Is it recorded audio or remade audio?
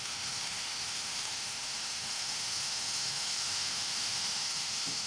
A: remade